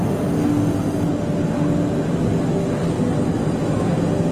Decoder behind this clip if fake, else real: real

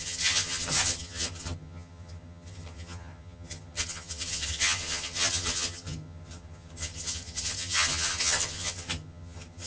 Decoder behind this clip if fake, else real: fake, vocoder, HiFi-GAN